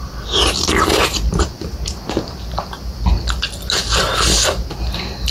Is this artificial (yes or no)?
no